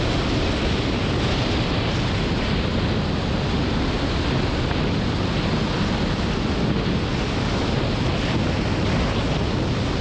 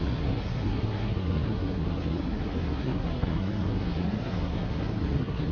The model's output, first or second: second